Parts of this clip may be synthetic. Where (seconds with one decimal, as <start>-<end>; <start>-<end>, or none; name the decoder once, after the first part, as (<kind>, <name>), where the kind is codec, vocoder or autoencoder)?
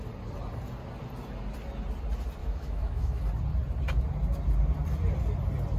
2.4-3.2 (autoencoder, DAC-VAE)